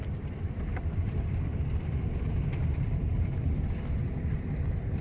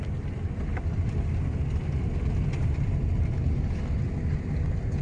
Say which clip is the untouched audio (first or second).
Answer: second